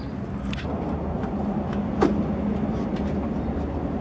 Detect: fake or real real